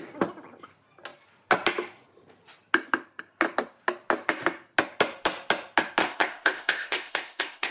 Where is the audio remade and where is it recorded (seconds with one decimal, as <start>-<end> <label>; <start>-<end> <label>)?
0.0-6.0 recorded; 6.0-7.7 remade

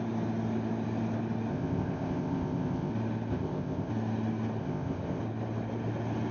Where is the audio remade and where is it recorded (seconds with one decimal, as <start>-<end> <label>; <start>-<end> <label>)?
0.0-1.5 recorded; 1.5-2.9 remade; 2.9-3.3 recorded; 3.3-3.9 remade; 3.9-4.6 recorded; 4.6-5.2 remade; 5.2-6.3 recorded

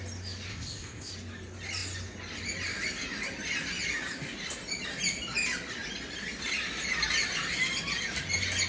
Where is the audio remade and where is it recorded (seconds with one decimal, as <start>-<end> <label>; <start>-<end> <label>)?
0.0-0.5 recorded; 0.5-1.1 remade; 1.1-8.7 recorded

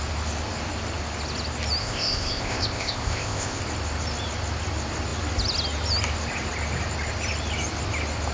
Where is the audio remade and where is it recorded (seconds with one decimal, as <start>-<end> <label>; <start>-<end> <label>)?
0.0-1.8 recorded; 1.8-3.6 remade; 3.6-8.3 recorded

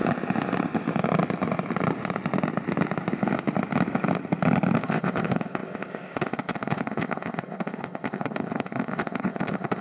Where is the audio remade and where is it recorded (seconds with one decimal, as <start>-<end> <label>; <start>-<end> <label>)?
0.0-4.8 recorded; 4.8-9.8 remade